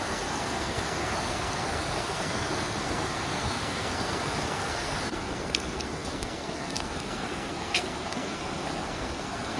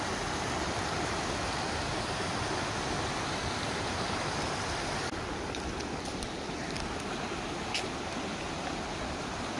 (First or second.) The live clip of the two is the second